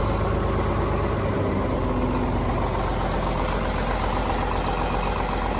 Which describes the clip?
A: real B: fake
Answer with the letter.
A